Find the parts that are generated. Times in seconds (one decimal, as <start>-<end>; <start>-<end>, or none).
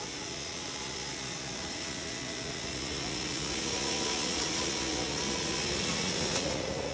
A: 0.0-6.9